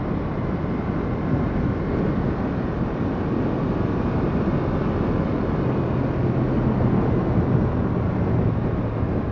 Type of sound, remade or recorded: recorded